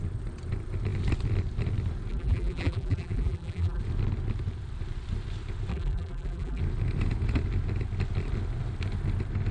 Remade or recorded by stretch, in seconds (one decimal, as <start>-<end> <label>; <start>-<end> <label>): 0.0-2.1 recorded; 2.1-3.8 remade; 3.8-5.7 recorded; 5.7-6.6 remade; 6.6-9.5 recorded